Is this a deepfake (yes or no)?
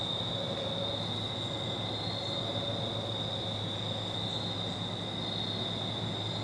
no